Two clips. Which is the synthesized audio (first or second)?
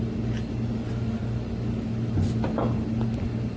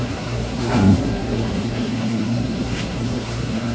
second